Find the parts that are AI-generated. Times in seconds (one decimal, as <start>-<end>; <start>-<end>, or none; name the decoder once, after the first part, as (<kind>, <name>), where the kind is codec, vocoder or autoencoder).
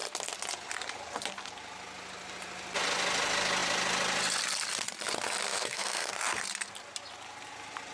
5.5-6.1 (autoencoder, DAC-VAE)